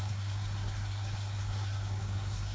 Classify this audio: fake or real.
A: fake